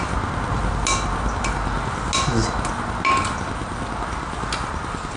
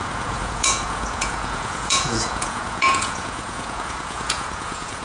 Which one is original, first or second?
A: first